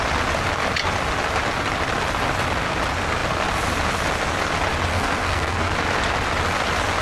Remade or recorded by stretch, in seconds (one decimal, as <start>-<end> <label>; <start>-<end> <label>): 0.0-4.9 recorded; 4.9-5.7 remade; 5.7-7.0 recorded